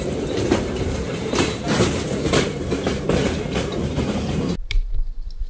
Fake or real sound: fake